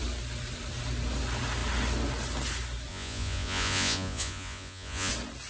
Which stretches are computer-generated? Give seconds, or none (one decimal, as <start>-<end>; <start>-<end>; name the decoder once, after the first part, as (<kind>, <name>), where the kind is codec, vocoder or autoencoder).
2.9-5.1 (vocoder, Vocos)